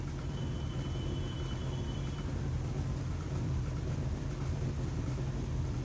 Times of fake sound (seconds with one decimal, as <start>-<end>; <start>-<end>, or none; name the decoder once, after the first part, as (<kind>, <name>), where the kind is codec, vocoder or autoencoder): 0.0-5.8 (vocoder, BigVGAN v2)